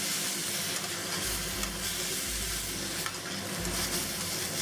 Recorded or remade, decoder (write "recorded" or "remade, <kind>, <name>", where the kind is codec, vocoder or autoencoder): recorded